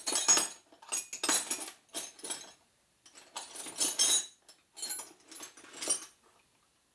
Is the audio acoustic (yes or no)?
yes